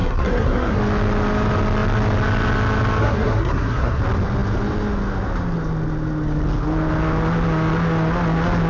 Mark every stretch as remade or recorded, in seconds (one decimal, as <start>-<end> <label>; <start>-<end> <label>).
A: 0.0-0.8 remade; 0.8-3.0 recorded; 3.0-4.0 remade; 4.0-8.7 recorded